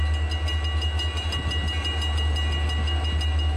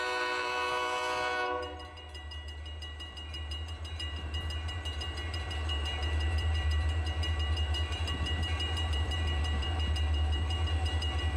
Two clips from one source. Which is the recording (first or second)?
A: first